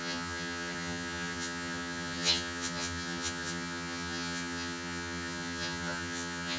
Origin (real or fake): fake